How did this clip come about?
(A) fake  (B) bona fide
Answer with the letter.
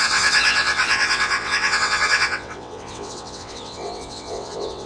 A